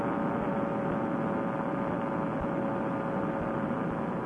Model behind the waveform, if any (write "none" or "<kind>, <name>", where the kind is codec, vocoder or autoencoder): none